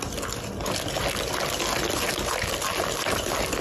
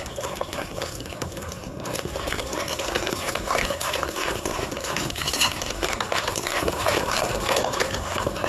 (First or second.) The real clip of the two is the first